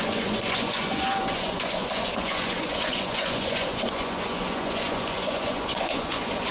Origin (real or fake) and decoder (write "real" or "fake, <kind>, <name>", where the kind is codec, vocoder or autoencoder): fake, vocoder, Vocos